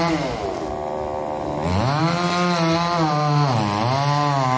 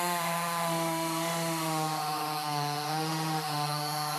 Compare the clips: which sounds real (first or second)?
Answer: first